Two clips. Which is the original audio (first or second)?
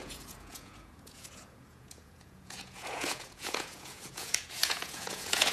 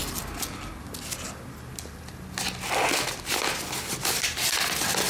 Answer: second